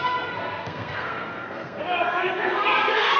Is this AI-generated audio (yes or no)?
yes